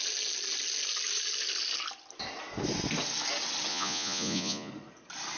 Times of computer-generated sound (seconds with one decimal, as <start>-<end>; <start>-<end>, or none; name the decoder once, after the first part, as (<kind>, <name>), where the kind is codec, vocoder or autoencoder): 3.7-4.7 (vocoder, Vocos)